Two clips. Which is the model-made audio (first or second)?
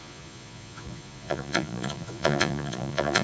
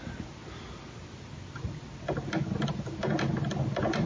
first